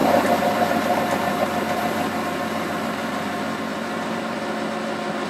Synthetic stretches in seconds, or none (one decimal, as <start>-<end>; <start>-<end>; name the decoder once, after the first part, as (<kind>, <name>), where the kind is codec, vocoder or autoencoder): 0.0-2.2 (vocoder, BigVGAN v2); 3.7-4.4